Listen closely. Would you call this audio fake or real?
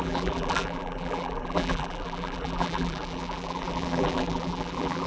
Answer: fake